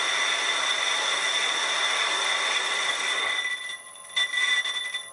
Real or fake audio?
real